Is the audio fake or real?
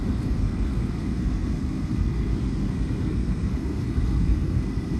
fake